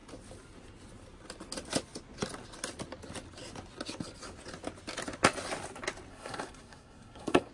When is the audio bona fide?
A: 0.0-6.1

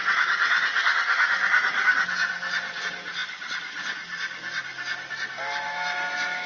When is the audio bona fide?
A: 0.0-6.5

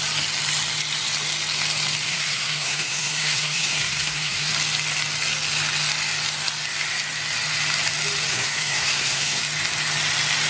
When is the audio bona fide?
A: 0.0-2.1; 4.5-8.3; 9.4-10.5

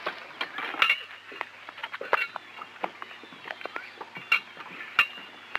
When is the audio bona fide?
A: 0.0-5.6

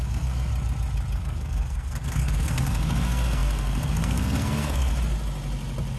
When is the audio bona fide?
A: 0.5-1.2; 4.9-6.0

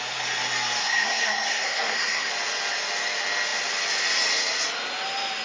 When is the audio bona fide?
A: 0.0-0.8; 2.3-5.4

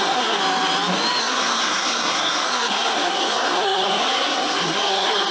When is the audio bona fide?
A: 0.4-1.2